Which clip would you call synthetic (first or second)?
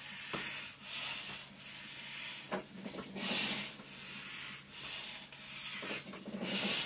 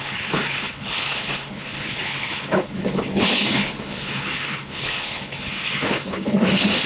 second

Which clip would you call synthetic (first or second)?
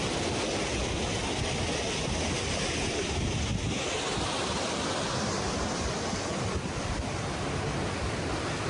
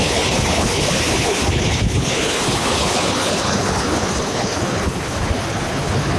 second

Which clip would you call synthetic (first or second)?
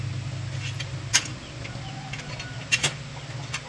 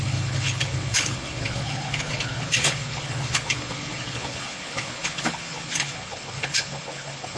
second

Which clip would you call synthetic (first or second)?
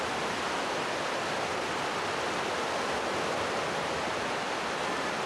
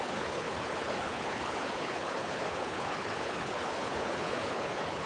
second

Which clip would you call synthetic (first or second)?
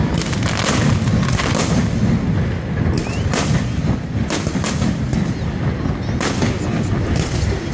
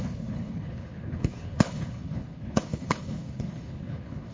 second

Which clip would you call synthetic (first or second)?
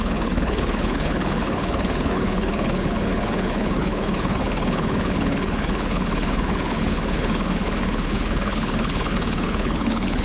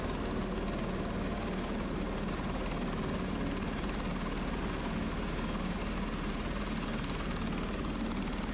first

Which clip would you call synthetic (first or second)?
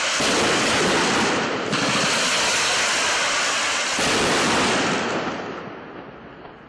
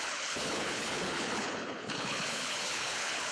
second